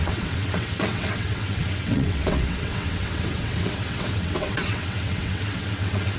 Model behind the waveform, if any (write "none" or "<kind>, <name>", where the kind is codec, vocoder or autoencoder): vocoder, WaveNeXt